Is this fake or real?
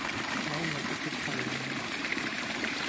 fake